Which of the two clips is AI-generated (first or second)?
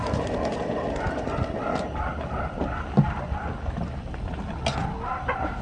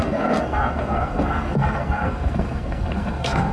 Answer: second